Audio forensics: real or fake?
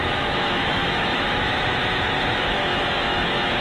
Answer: fake